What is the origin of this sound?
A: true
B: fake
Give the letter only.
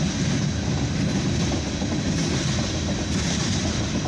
A